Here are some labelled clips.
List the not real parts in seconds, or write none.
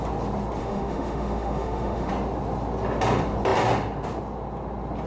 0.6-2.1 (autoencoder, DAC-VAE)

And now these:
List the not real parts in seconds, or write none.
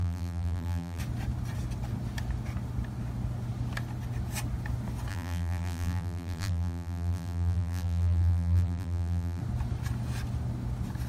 0.0-1.0 (vocoder, BigVGAN v2); 5.1-9.4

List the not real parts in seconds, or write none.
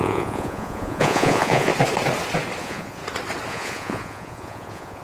0.0-1.7 (vocoder, Vocos); 2.6-3.0; 3.5-5.0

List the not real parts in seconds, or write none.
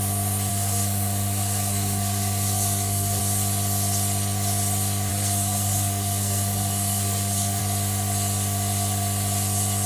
0.5-3.2 (codec, SNAC); 5.1-7.6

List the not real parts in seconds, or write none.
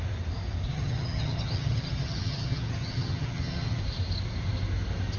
0.7-3.8 (vocoder, HiFi-GAN)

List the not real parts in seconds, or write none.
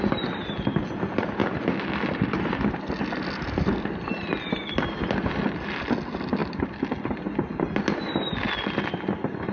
6.4-7.1 (vocoder, BigVGAN v2)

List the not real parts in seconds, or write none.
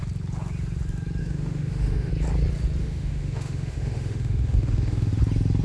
1.2-2.1 (autoencoder, DAC-VAE); 2.8-5.1